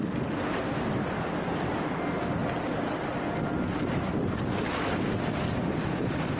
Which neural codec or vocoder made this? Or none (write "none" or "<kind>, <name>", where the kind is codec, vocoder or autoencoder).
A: none